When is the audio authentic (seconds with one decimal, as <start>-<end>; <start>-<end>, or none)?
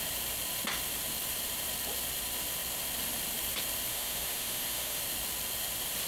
0.0-3.9; 5.0-6.1